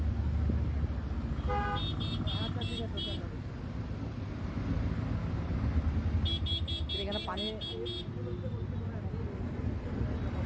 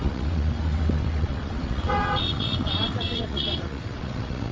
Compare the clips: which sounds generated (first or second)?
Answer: second